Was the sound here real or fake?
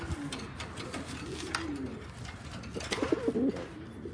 real